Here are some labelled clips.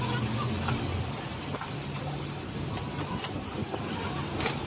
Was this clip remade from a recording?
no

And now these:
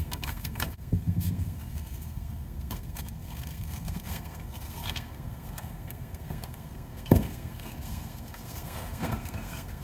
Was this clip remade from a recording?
yes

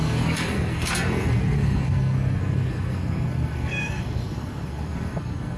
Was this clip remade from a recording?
yes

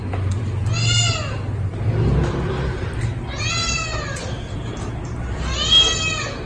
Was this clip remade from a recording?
no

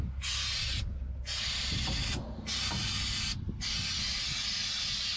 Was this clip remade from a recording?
no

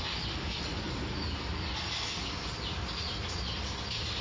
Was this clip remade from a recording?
no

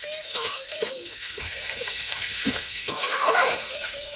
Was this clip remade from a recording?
yes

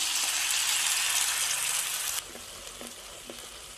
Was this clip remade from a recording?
no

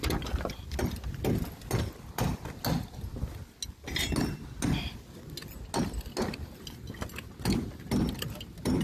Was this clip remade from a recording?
no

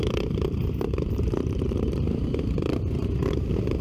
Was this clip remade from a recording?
yes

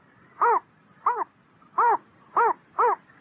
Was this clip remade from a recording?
no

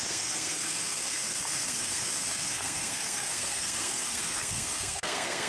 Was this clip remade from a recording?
yes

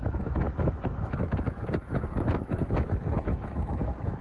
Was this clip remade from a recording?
yes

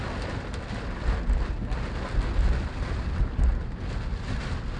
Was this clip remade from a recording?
no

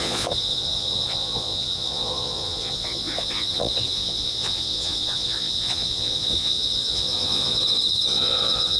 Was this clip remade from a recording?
yes